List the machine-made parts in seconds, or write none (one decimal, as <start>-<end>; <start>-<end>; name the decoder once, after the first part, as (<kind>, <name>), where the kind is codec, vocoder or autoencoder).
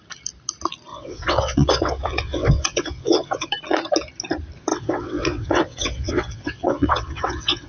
0.9-3.5 (vocoder, WaveNeXt); 4.7-7.7